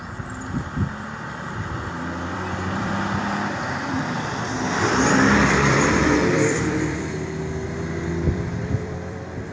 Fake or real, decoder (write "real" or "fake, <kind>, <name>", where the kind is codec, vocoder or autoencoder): fake, vocoder, BigVGAN v2